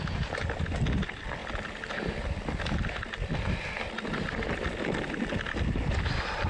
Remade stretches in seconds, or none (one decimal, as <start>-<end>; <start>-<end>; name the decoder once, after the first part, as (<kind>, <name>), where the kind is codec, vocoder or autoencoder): none